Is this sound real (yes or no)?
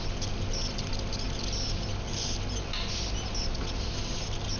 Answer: yes